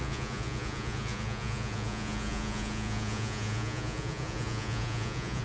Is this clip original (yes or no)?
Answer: no